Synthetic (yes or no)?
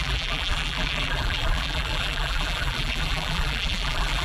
yes